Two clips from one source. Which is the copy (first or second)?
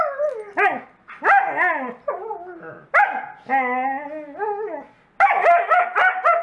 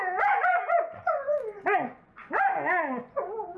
second